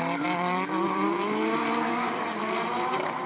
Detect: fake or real fake